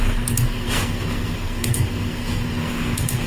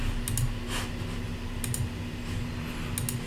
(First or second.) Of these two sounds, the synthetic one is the first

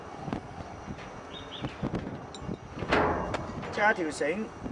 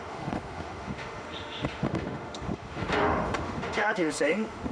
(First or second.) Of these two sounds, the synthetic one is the second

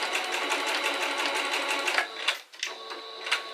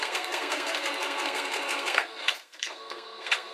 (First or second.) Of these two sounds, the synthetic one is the second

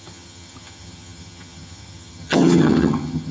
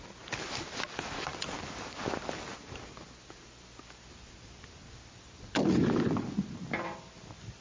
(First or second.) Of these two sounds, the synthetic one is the first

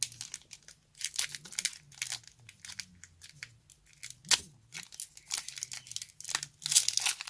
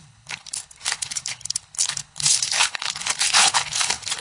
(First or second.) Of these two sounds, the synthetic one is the second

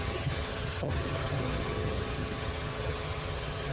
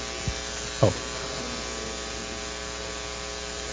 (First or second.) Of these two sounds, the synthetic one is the first